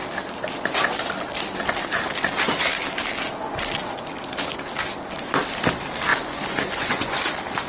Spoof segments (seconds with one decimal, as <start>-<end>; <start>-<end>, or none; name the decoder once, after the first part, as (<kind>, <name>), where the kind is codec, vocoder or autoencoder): 6.1-7.2 (vocoder, Vocos)